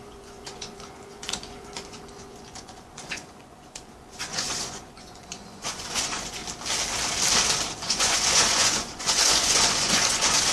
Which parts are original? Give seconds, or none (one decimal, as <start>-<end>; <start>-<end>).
6.4-7.7